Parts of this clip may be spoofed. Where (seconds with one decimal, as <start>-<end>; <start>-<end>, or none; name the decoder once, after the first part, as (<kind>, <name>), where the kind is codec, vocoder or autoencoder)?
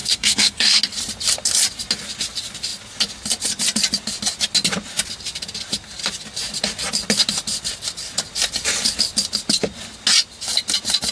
0.0-0.8 (codec, SNAC)